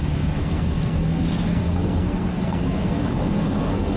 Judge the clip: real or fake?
fake